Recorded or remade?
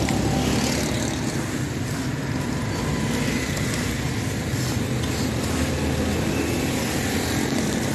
recorded